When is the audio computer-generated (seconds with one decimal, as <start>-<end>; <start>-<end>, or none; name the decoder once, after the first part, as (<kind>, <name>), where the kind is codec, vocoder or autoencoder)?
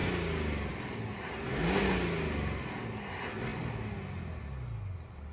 none